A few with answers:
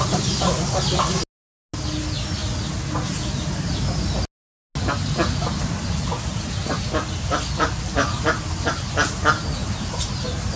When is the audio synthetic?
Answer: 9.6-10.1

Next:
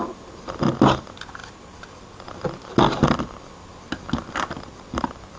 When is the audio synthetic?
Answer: none

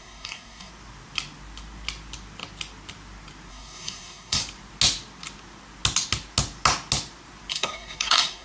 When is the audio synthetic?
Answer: 0.0-0.7; 3.5-4.4; 7.5-8.4

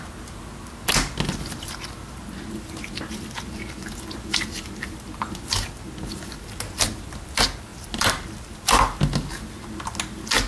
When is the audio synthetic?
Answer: none

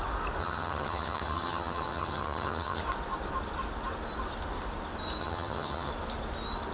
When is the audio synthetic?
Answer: 0.4-2.8; 5.2-5.9